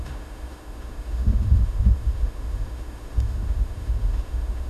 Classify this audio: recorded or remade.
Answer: remade